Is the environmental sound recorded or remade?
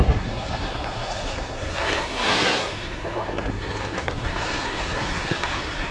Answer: remade